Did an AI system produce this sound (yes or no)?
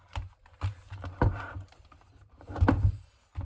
yes